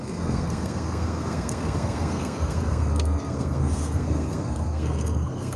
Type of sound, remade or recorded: remade